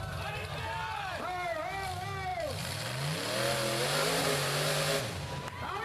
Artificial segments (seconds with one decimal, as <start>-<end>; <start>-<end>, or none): none